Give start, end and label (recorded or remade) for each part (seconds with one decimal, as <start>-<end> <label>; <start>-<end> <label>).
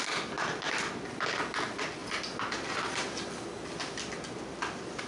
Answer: 0.0-5.1 recorded